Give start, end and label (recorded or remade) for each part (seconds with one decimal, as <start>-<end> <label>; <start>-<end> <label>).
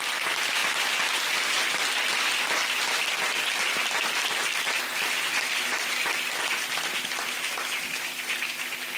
0.0-0.6 remade; 0.6-3.0 recorded; 3.0-9.0 remade